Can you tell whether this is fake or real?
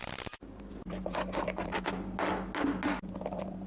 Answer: real